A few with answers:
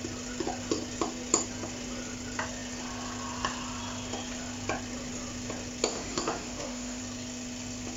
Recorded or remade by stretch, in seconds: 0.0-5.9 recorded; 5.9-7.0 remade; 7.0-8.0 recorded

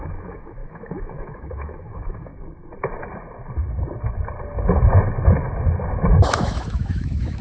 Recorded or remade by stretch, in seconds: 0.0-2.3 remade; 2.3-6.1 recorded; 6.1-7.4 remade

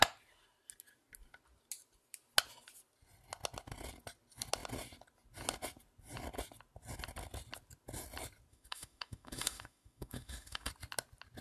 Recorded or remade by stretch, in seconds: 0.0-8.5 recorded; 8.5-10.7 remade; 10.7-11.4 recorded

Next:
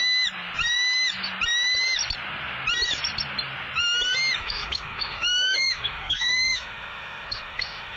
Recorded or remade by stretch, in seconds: 0.0-4.4 recorded; 4.4-8.0 remade

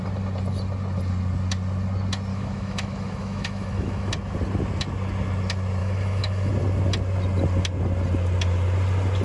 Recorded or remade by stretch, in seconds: 0.0-2.3 recorded; 2.3-4.1 remade; 4.1-5.8 recorded; 5.8-6.5 remade; 6.5-9.2 recorded

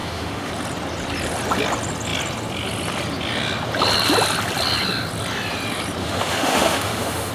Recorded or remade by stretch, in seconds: 0.0-0.5 remade; 0.5-6.0 recorded; 6.0-7.3 remade